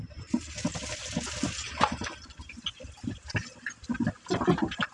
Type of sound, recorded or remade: recorded